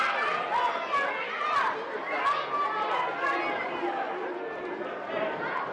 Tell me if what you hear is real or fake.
real